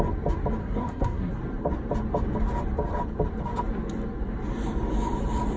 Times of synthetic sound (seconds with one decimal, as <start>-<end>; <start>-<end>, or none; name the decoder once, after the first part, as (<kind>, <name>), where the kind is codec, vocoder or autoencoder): 0.6-1.3 (codec, SNAC)